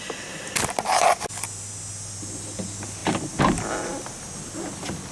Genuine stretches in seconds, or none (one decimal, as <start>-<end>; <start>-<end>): 0.0-5.1